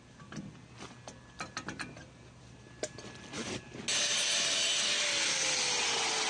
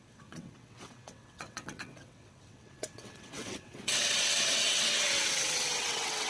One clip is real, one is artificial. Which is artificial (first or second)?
second